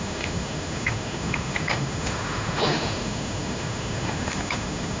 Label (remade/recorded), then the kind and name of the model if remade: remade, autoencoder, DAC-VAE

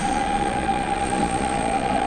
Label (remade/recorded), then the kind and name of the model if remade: remade, vocoder, Vocos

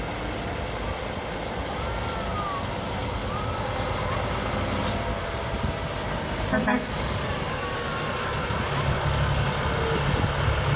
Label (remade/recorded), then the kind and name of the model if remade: recorded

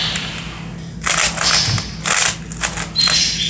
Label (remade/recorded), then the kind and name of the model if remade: recorded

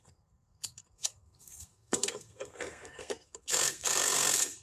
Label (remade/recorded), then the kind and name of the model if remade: remade, codec, SNAC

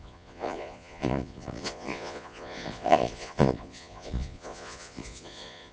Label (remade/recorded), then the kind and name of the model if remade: remade, vocoder, Vocos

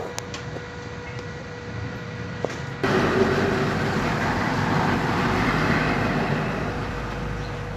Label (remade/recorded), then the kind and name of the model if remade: recorded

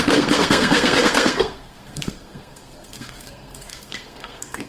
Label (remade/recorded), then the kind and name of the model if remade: remade, codec, SNAC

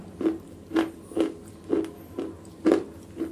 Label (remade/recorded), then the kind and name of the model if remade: recorded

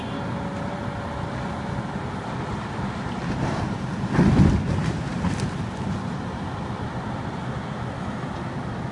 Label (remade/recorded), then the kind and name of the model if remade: recorded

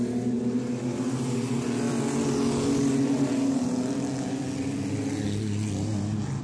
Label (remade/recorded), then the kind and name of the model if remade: recorded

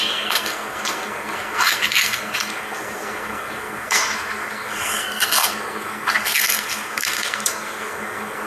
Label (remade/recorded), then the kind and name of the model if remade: remade, codec, SNAC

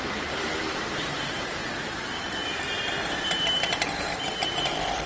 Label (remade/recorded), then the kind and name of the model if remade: remade, vocoder, BigVGAN v2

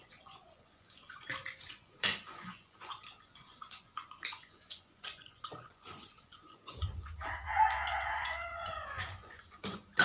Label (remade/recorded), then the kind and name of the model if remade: remade, vocoder, Vocos